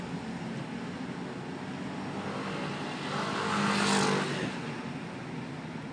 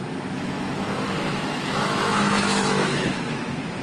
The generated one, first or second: second